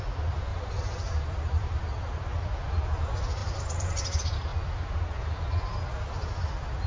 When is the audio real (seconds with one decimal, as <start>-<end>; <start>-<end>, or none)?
0.0-0.5; 2.2-3.4; 3.9-6.9